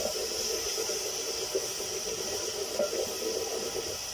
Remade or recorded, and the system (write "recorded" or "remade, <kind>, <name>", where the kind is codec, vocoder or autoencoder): recorded